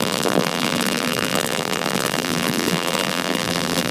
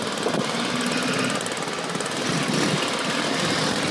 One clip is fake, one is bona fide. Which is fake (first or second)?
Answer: first